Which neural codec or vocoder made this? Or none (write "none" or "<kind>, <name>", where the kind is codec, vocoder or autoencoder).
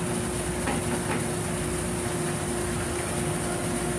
none